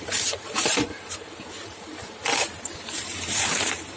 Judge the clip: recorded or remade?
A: remade